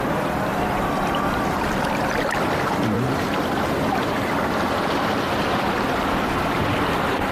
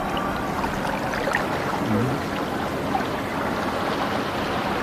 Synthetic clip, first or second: first